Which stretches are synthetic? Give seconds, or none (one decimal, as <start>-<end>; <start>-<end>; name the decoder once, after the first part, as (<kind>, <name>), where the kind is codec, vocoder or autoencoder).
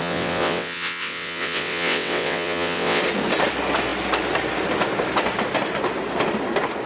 0.0-3.0 (vocoder, WaveNeXt)